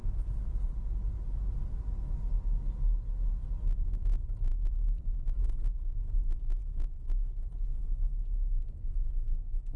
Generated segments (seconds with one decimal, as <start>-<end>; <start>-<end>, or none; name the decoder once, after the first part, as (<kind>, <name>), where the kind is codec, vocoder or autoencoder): none